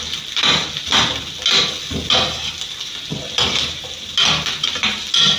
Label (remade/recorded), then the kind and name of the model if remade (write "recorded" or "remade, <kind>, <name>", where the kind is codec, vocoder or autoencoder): recorded